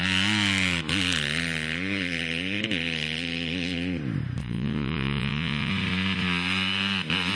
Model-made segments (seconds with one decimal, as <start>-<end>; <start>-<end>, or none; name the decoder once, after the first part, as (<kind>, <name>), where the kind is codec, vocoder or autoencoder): 4.4-5.7 (vocoder, Vocos)